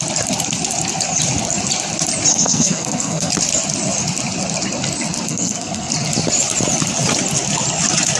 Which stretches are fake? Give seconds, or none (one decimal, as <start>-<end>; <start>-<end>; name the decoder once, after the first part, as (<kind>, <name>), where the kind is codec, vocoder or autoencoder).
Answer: 2.3-3.3 (codec, SNAC); 5.3-5.9